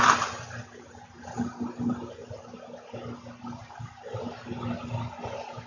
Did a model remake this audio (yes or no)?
no